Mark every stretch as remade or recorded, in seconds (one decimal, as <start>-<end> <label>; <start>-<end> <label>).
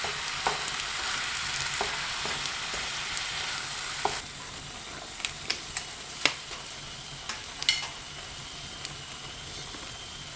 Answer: 0.0-10.4 recorded